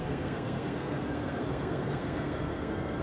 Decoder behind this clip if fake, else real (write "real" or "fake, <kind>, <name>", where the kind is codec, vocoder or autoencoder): fake, codec, SNAC